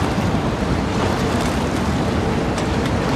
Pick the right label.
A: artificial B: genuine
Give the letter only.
B